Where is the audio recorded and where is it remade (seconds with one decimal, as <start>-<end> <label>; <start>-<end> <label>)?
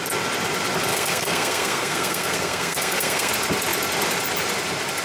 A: 0.0-0.9 recorded; 0.9-3.3 remade; 3.3-5.0 recorded